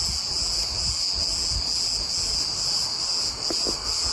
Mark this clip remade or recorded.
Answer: recorded